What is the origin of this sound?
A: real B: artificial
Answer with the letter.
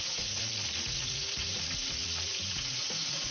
B